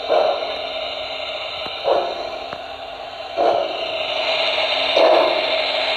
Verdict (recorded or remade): recorded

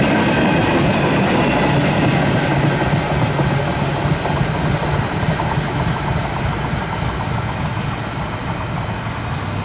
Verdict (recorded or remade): recorded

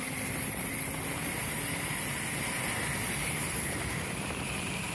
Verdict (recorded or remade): recorded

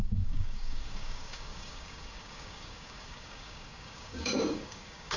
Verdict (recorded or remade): remade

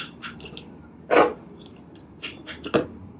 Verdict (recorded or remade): recorded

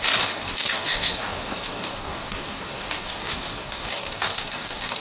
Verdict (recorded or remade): remade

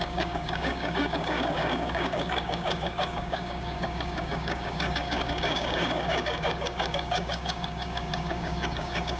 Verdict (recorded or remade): remade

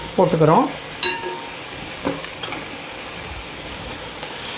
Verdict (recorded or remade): remade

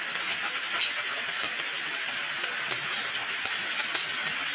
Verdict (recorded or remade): recorded